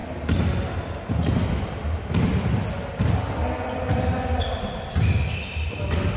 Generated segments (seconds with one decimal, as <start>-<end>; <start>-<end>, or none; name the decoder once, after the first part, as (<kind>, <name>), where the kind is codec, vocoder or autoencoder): none